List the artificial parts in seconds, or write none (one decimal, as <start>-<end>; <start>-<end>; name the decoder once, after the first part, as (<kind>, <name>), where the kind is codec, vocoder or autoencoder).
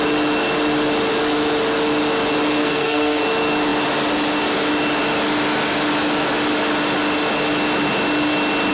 2.6-3.2 (codec, SNAC)